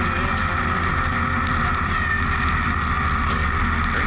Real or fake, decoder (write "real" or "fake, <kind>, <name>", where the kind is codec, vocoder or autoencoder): real